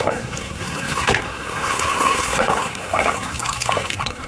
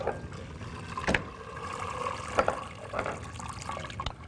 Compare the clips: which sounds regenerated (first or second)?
first